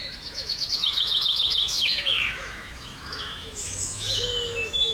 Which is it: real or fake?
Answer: fake